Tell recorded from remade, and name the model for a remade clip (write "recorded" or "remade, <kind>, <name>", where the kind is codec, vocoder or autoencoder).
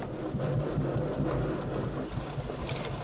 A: recorded